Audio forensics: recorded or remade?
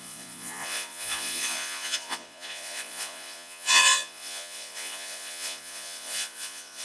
remade